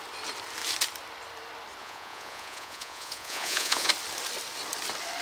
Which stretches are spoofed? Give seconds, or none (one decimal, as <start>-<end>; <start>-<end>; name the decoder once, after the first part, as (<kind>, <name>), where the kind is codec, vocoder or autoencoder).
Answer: 1.8-3.9 (vocoder, Vocos)

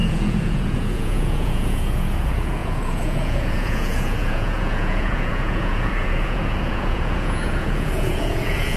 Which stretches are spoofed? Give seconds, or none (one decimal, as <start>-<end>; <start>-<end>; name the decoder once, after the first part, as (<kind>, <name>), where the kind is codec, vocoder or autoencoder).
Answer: 0.0-8.8 (vocoder, Vocos)

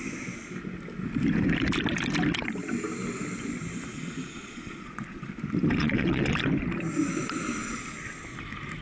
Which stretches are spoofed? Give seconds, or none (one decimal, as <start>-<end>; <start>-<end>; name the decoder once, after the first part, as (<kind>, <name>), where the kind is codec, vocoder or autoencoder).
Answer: 3.9-5.3 (vocoder, Vocos); 5.8-6.3

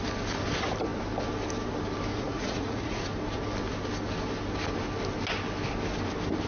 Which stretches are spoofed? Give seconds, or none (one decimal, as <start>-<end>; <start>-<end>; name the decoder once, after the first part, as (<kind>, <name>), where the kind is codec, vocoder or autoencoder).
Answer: 2.1-3.1 (vocoder, Vocos)

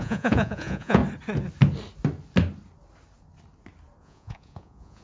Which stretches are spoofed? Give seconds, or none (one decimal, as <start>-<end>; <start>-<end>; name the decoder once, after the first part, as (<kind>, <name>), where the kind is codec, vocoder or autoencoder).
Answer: 0.0-1.0 (vocoder, Vocos); 4.0-5.0

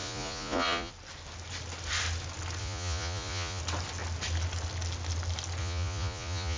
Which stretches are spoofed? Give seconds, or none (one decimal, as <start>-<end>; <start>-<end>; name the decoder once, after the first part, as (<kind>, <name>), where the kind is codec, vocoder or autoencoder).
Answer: 0.0-0.9 (vocoder, Vocos); 2.6-3.6; 5.6-6.6